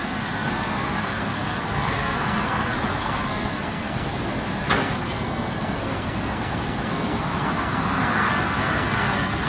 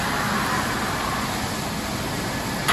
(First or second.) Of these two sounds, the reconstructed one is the first